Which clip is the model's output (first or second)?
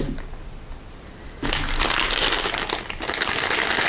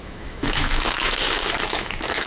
second